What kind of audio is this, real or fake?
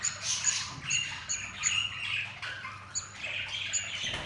real